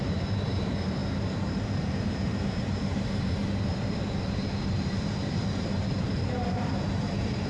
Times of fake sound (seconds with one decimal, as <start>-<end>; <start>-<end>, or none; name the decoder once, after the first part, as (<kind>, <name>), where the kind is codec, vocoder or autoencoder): 0.0-1.0 (vocoder, BigVGAN v2); 1.5-7.5